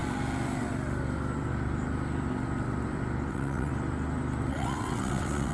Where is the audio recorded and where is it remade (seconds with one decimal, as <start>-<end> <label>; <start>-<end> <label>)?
0.0-3.3 recorded; 3.3-3.7 remade; 3.7-4.5 recorded; 4.5-5.5 remade